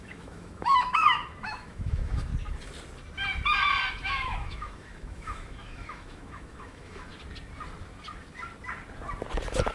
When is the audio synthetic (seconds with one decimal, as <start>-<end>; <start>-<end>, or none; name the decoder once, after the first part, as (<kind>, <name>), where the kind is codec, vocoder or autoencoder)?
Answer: 0.0-2.3 (autoencoder, DAC-VAE); 3.9-7.1